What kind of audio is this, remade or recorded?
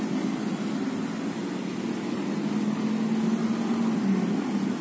recorded